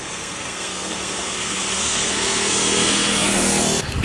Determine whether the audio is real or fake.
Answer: fake